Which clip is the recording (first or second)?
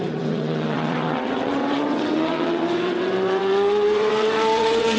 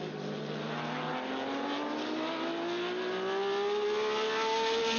second